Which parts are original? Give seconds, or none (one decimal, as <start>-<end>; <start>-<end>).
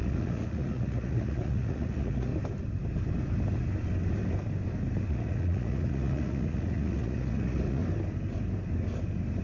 2.3-5.1; 7.8-9.4